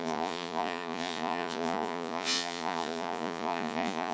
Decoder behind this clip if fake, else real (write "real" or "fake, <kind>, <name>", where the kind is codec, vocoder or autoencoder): fake, vocoder, Vocos